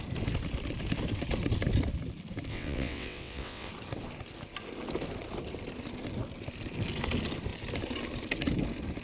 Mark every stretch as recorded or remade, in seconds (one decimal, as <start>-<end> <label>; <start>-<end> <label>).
0.0-2.5 recorded; 2.5-3.7 remade; 3.7-9.0 recorded